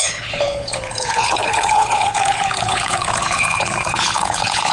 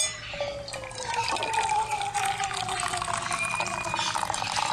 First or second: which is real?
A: second